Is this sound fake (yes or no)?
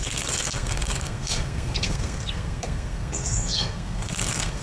yes